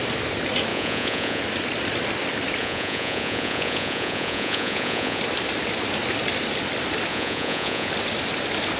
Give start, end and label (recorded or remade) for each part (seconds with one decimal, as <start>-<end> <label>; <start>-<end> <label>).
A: 0.0-0.7 recorded; 0.7-1.4 remade; 1.4-2.6 recorded; 2.6-5.2 remade; 5.2-7.1 recorded; 7.1-7.9 remade; 7.9-8.8 recorded

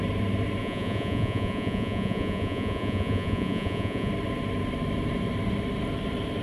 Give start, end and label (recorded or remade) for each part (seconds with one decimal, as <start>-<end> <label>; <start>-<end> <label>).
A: 0.0-0.6 recorded; 0.6-4.1 remade; 4.1-6.4 recorded